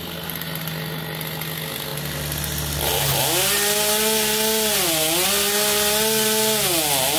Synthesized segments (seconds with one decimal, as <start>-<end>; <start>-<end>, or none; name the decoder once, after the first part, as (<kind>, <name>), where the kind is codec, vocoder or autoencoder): none